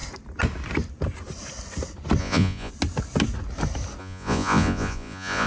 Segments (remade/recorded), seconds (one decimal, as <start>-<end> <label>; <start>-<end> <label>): 0.0-2.2 recorded; 2.2-2.7 remade; 2.7-4.0 recorded; 4.0-5.5 remade